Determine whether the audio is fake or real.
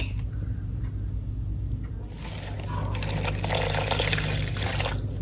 real